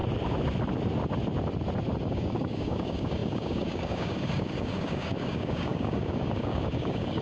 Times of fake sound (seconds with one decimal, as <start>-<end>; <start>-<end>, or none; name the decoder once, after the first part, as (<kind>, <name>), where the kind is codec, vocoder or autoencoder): 2.1-7.2 (codec, DAC)